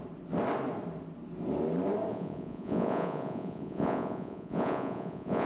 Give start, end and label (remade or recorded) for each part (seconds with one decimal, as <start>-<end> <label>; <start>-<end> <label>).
0.0-2.1 recorded; 2.1-5.5 remade